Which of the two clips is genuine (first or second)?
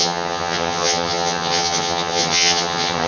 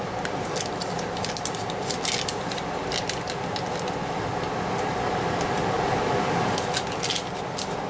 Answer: second